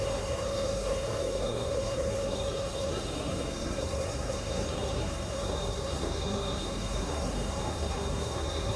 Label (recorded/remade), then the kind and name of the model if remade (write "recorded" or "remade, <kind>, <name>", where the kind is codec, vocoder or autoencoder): remade, codec, SNAC